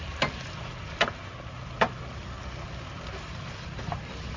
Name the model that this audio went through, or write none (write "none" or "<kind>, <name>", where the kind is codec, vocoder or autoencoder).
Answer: none